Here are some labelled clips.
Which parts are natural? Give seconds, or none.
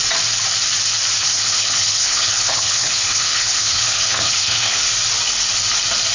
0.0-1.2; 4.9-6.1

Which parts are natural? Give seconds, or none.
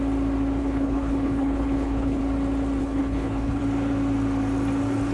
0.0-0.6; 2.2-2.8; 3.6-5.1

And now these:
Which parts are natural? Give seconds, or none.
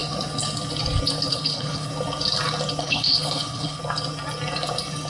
0.0-1.3; 1.9-2.8; 3.8-5.1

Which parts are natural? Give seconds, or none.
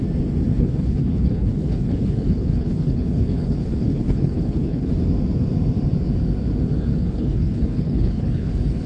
0.0-0.5; 4.9-6.9; 8.5-8.9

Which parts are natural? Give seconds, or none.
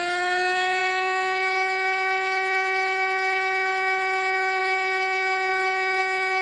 none